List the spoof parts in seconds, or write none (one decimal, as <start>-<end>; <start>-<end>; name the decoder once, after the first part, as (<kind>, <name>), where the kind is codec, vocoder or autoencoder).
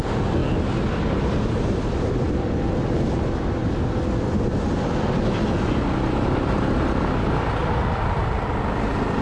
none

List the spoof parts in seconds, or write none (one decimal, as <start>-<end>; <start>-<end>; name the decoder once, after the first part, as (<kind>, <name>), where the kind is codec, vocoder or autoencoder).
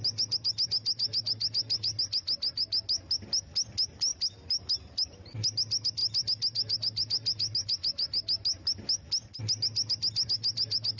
none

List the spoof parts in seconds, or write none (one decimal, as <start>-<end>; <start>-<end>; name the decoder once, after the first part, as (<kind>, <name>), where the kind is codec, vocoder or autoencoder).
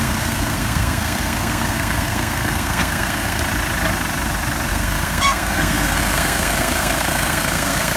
0.0-3.4 (codec, SNAC); 4.7-8.0